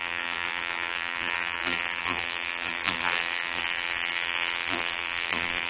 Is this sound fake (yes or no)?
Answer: yes